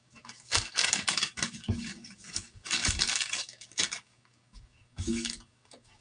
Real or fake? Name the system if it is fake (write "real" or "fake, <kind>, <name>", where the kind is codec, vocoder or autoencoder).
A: fake, codec, DAC